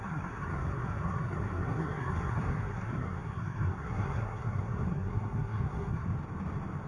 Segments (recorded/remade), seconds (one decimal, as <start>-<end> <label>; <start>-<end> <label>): 0.0-6.1 remade; 6.1-6.9 recorded